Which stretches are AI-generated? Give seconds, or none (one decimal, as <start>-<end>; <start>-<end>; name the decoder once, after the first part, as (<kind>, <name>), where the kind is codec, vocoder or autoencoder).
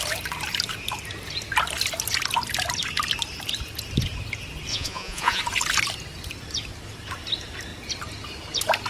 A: 4.7-5.4 (vocoder, Vocos)